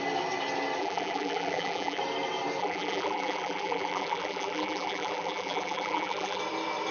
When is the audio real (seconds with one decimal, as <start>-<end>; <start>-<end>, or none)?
0.0-0.8; 2.0-2.6; 6.4-6.9